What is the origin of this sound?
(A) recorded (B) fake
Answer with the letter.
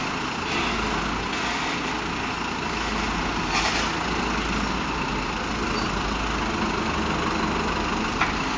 A